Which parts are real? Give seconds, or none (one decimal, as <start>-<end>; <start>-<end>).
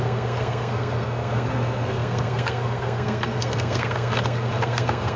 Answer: none